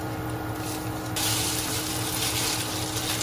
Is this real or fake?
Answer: real